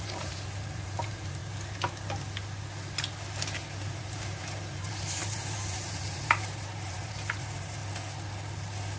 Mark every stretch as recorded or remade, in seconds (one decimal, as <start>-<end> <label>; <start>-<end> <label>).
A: 0.0-1.4 remade; 1.4-4.0 recorded; 4.0-7.8 remade; 7.8-9.0 recorded